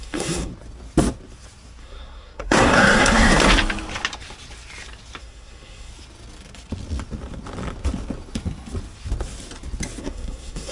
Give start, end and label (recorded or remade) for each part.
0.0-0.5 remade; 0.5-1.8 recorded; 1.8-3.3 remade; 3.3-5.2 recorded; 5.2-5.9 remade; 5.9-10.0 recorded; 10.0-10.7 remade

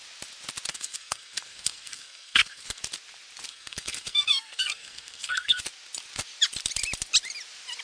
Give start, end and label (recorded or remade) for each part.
0.0-0.7 recorded; 0.7-2.8 remade; 2.8-3.5 recorded; 3.5-5.6 remade; 5.6-7.8 recorded

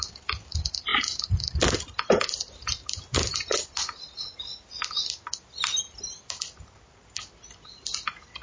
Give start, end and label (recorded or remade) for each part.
0.0-8.4 recorded